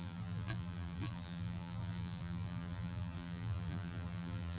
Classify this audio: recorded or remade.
remade